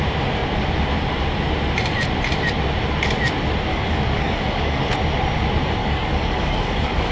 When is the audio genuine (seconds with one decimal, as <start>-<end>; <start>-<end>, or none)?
0.0-3.7; 4.9-5.8